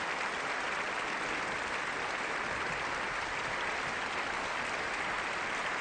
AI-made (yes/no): no